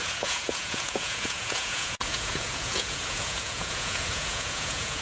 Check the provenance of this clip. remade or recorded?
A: remade